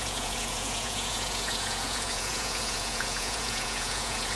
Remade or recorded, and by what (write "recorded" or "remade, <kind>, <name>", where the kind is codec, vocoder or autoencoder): remade, vocoder, Vocos